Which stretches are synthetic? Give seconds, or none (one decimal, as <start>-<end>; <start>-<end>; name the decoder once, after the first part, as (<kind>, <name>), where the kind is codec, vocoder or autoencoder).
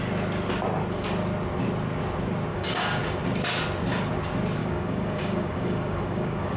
2.5-3.0 (codec, DAC); 4.6-6.6